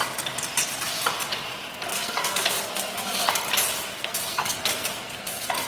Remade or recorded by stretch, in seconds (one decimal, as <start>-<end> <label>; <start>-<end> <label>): 0.0-1.9 recorded; 1.9-3.3 remade; 3.3-3.9 recorded; 3.9-5.7 remade